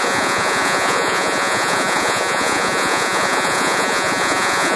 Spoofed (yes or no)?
yes